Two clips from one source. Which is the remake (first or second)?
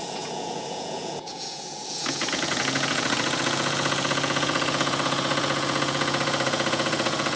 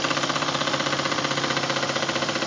first